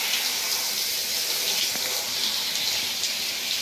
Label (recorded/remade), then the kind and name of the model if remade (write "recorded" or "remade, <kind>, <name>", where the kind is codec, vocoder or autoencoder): recorded